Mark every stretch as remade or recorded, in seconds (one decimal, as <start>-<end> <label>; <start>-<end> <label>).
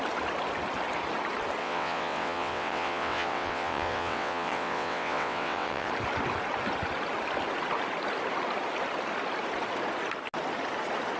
0.0-1.6 recorded; 1.6-5.9 remade; 5.9-11.2 recorded